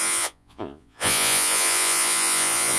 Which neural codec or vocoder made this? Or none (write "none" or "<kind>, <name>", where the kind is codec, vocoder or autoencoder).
vocoder, Vocos